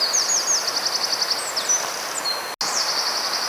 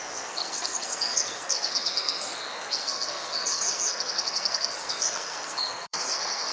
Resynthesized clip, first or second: second